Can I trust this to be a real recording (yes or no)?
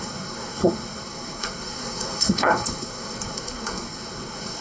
no